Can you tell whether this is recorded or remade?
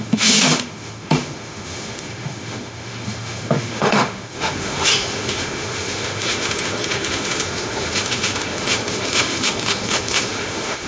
remade